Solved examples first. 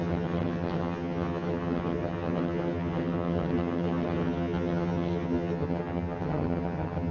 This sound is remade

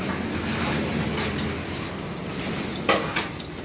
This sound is recorded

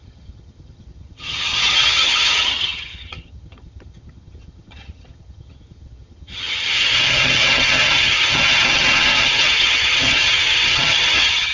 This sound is remade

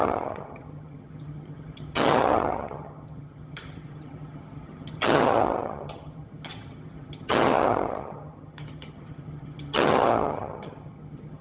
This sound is remade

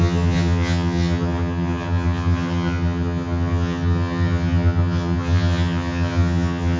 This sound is remade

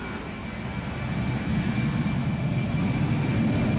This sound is recorded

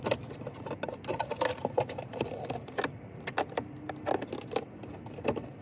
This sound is recorded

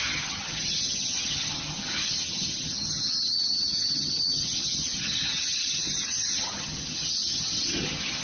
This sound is remade